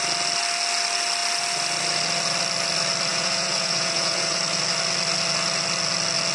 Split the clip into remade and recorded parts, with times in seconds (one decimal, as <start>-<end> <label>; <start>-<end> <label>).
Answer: 0.0-3.1 recorded; 3.1-4.4 remade; 4.4-6.3 recorded